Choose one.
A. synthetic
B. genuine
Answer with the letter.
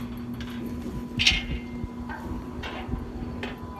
B